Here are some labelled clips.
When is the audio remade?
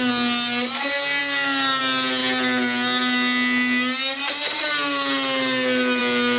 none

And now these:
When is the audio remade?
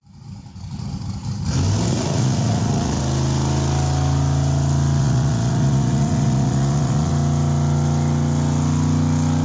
1.9-3.0 (vocoder, Vocos); 5.0-7.1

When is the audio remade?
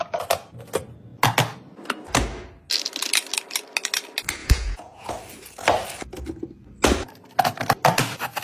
4.4-5.1 (vocoder, Vocos)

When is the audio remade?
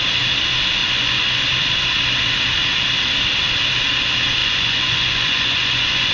0.8-1.4 (vocoder, Vocos); 4.4-6.1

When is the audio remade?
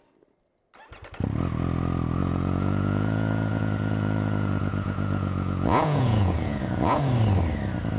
2.2-7.0 (vocoder, Vocos)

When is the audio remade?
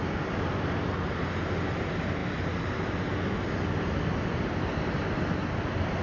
none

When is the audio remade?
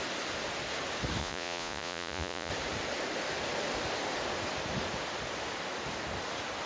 1.2-2.5 (vocoder, Vocos)